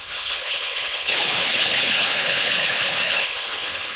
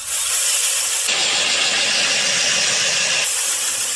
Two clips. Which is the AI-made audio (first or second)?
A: first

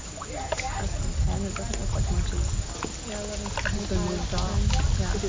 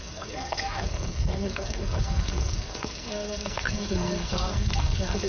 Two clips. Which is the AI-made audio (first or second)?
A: second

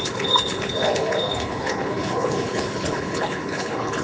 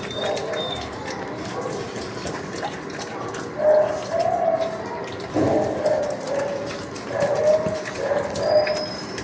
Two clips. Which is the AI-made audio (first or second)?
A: first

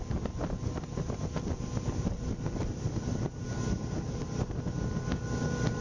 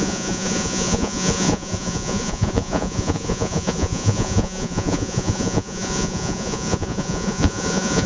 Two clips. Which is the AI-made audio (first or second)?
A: second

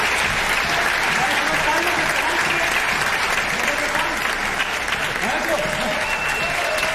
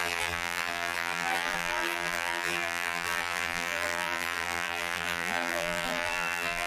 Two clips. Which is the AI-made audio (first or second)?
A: second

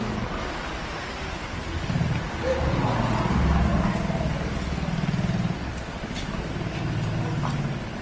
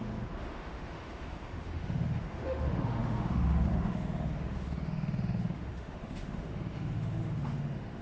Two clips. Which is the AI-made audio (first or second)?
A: second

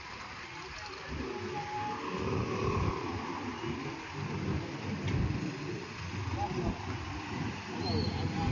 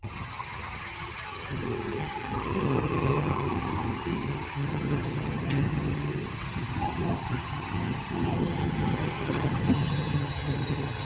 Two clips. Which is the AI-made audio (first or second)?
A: second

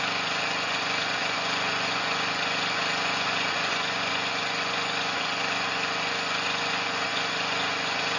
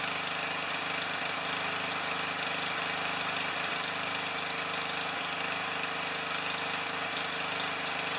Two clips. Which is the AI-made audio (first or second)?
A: first